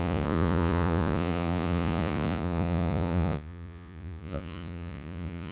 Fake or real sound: fake